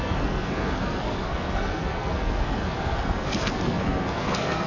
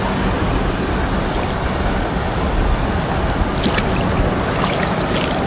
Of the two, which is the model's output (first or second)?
first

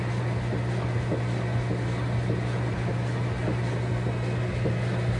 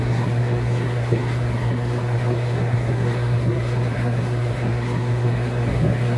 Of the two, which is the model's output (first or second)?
second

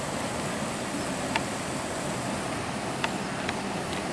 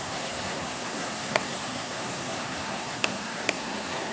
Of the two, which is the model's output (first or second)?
second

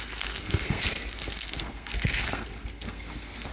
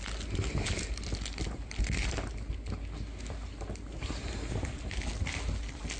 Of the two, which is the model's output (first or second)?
first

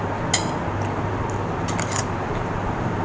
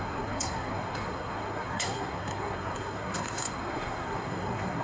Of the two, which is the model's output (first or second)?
second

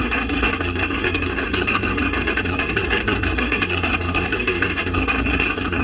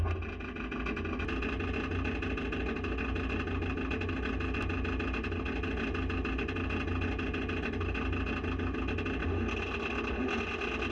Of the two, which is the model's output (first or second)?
first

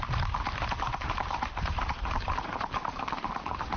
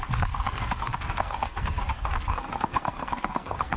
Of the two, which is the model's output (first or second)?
second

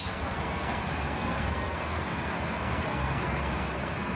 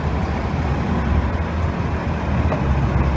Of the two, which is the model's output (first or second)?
first